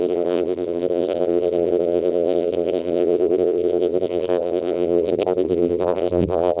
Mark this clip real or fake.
fake